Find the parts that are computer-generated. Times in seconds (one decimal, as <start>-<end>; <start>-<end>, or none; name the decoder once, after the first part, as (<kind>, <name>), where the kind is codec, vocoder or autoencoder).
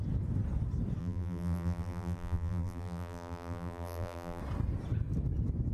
1.0-4.4 (vocoder, BigVGAN v2)